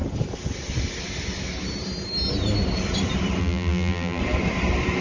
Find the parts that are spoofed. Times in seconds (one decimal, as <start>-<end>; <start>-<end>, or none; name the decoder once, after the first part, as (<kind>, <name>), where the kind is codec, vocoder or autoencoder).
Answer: 3.4-4.2 (vocoder, BigVGAN v2)